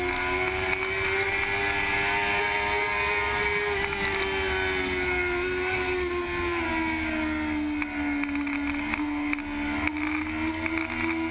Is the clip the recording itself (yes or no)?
yes